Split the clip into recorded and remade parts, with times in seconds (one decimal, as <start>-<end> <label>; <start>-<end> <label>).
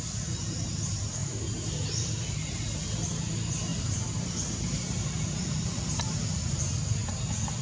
0.0-1.2 recorded; 1.2-3.2 remade; 3.2-3.7 recorded; 3.7-6.4 remade; 6.4-7.6 recorded